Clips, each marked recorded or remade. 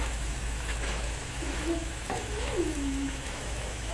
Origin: remade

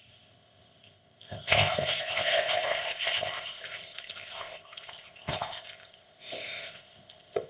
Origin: remade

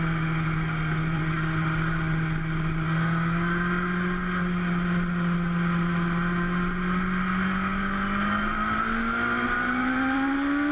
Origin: recorded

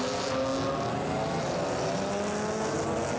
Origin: recorded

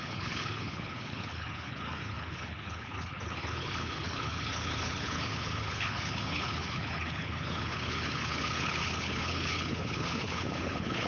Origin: remade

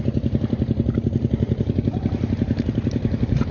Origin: remade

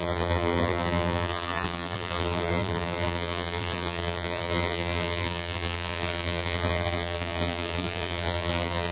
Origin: remade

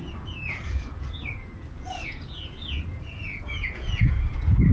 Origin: remade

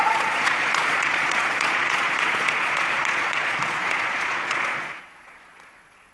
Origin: remade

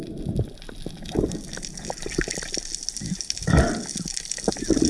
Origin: recorded